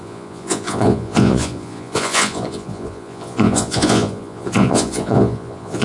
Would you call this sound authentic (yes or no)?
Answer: no